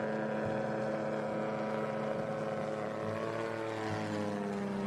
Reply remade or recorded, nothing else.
recorded